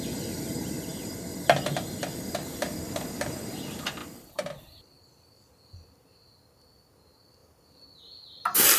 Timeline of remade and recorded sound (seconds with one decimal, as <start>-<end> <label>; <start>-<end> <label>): 0.0-2.5 recorded; 2.5-3.1 remade; 3.1-4.0 recorded; 4.0-5.5 remade; 5.5-8.8 recorded